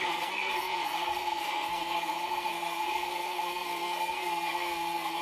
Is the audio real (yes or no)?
no